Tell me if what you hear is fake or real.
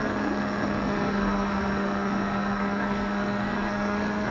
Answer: fake